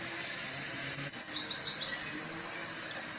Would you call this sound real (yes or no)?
yes